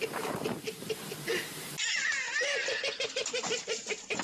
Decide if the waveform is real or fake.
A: fake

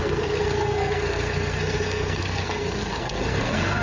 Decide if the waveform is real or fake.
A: fake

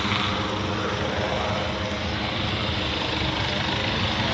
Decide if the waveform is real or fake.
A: real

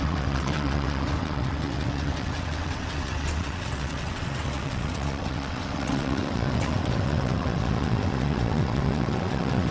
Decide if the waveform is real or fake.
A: fake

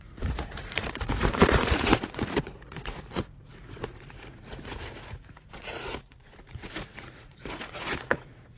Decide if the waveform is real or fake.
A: fake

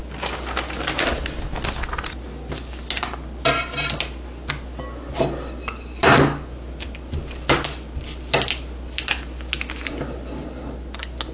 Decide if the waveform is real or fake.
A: real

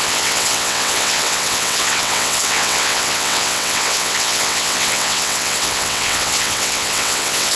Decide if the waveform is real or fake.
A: fake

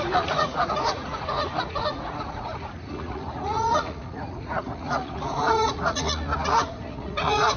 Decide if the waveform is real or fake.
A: fake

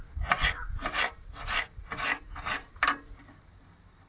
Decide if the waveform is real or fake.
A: real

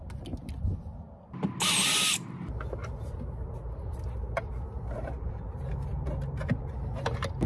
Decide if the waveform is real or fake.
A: real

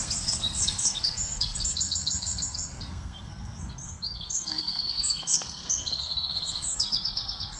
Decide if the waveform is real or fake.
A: fake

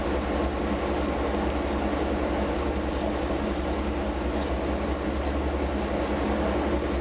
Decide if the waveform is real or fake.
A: real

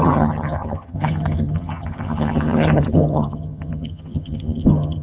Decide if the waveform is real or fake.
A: fake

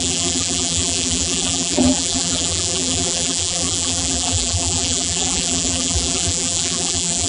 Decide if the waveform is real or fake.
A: fake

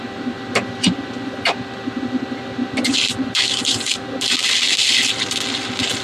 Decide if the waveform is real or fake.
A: real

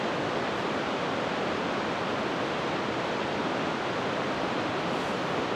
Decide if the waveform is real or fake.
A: real